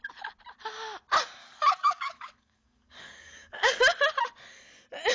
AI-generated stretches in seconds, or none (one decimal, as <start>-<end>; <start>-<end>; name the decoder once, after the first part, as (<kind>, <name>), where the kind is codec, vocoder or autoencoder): 1.4-3.8 (codec, DAC)